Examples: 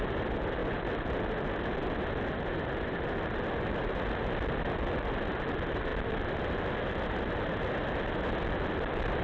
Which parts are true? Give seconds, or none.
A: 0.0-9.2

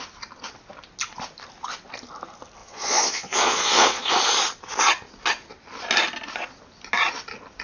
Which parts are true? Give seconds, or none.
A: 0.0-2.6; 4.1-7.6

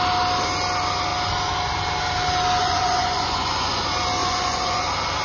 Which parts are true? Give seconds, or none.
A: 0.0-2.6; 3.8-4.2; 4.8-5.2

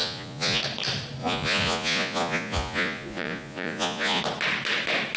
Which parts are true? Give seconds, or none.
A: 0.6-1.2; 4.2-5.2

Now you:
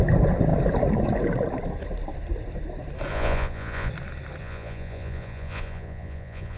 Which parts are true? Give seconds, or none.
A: 0.0-3.1; 3.9-4.4